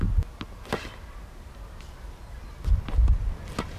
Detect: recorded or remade recorded